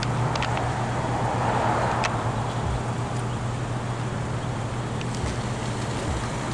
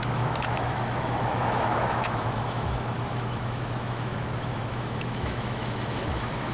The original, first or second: first